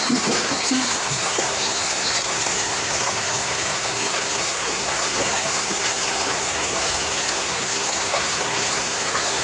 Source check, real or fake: fake